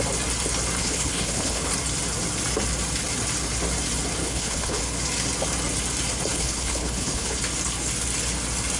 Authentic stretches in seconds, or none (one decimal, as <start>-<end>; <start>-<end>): 0.0-0.8; 1.7-4.2; 4.8-6.3; 7.4-8.8

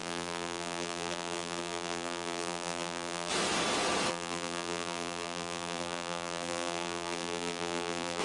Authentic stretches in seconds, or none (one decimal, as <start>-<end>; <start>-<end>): 3.3-4.1

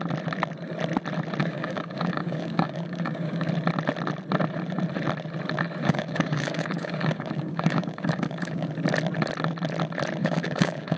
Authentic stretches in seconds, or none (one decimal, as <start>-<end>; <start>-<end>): 0.0-1.4; 3.5-5.8; 8.7-10.2

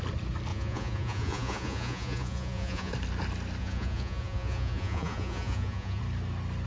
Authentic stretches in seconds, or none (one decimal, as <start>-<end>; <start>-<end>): 0.0-0.5; 2.9-3.6; 6.0-6.7

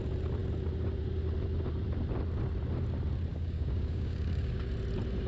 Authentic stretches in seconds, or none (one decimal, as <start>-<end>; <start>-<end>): 0.0-3.3; 4.7-5.3

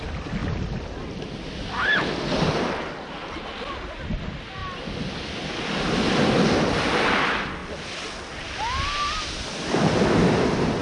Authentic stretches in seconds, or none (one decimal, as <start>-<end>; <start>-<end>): 0.0-10.8